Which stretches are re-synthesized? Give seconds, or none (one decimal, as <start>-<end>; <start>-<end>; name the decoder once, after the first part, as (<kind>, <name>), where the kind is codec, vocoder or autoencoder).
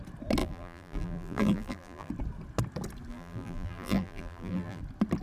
0.4-2.1 (vocoder, BigVGAN v2); 3.1-4.8